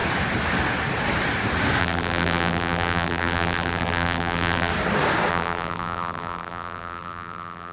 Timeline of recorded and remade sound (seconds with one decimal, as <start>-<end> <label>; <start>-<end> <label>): 0.0-1.8 recorded; 1.8-4.7 remade; 4.7-5.3 recorded; 5.3-7.7 remade